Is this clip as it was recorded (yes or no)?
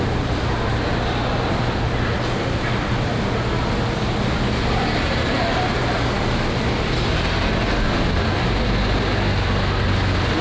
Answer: yes